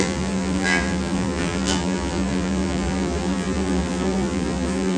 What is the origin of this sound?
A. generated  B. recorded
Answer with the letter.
A